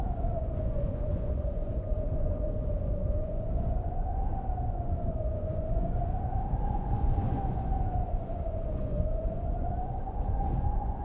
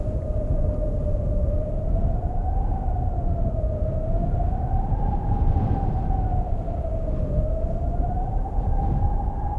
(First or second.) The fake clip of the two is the first